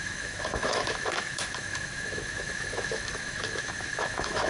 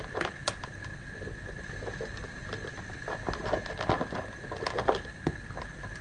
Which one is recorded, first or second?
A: second